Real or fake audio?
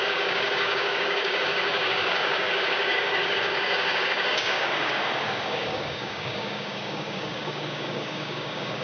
fake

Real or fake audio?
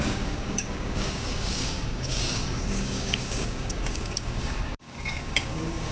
fake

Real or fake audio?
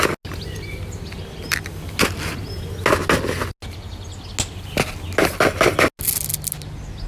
real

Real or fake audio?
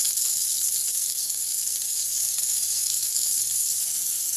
fake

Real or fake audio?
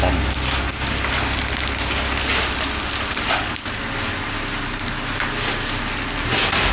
real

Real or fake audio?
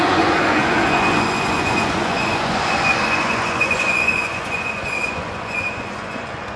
fake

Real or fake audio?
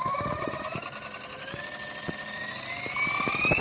real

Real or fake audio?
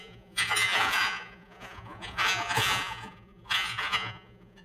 fake